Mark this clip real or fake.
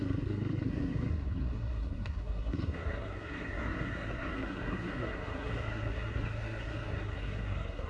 fake